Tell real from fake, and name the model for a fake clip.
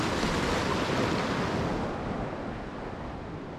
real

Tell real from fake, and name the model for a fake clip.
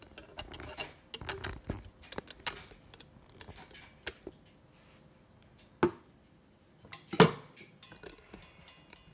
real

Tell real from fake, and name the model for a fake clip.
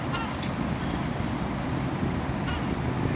real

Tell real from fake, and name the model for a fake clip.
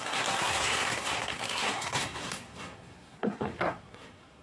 fake, codec, SNAC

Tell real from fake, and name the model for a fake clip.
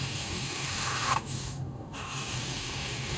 fake, codec, DAC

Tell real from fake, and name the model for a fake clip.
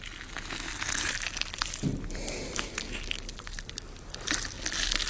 real